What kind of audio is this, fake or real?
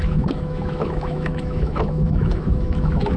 fake